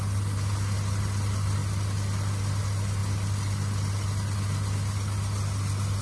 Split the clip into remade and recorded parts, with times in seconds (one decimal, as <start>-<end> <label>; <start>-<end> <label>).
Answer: 0.0-6.0 recorded